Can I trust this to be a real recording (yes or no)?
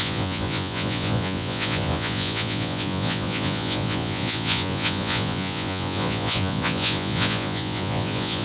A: no